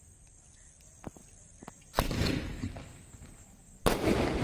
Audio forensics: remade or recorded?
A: recorded